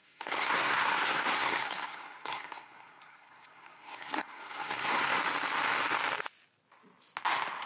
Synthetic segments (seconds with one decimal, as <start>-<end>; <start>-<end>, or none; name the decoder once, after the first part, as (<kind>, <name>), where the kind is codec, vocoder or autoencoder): 0.0-5.2 (codec, SNAC)